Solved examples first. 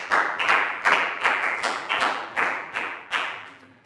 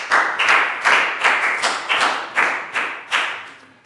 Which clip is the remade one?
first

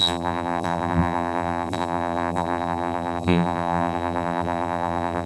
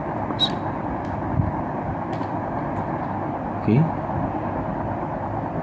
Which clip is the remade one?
first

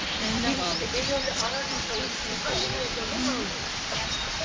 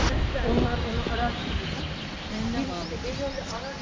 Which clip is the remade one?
first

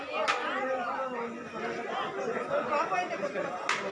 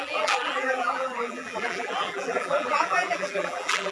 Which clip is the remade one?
second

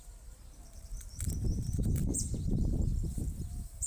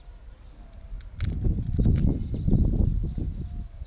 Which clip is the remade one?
first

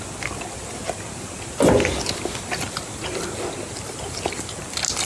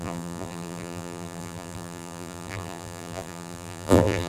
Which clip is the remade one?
second